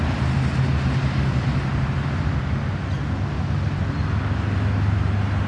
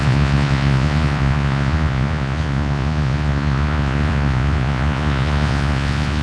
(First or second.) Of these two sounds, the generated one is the second